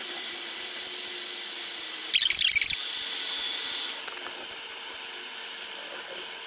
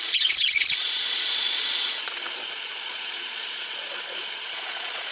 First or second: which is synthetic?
second